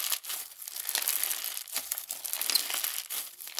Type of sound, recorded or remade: recorded